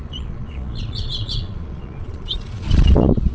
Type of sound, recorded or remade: remade